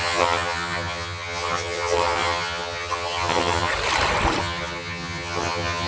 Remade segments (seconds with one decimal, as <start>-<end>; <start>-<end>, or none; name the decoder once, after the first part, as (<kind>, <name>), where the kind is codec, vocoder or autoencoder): 0.0-3.7 (vocoder, HiFi-GAN); 4.4-5.9